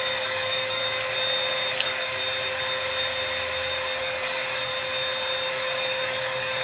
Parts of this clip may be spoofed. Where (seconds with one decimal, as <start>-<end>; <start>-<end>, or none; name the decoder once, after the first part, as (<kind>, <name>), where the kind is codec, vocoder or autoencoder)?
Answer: 0.0-0.8 (codec, DAC); 1.7-2.2; 4.0-4.7; 5.5-6.6